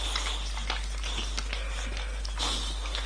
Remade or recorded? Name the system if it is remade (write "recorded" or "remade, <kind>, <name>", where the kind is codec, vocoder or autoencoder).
recorded